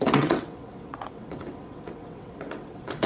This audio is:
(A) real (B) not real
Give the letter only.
B